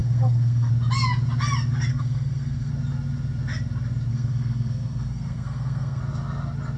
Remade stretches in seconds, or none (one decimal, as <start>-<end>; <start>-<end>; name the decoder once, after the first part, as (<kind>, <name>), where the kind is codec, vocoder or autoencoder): 0.0-0.7 (codec, SNAC); 1.9-2.7; 4.1-6.0